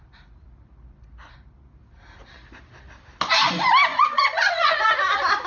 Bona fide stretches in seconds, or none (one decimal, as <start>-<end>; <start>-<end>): 0.0-3.9; 4.8-5.5

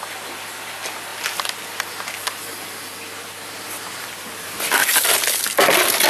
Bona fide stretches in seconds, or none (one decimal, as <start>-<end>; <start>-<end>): 0.0-6.1

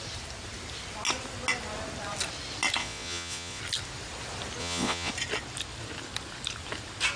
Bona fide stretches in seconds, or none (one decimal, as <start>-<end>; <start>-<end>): 0.0-2.8; 3.6-4.6; 5.1-7.2